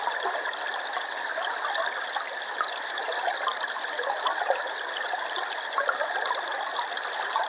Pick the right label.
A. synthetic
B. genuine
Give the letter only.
B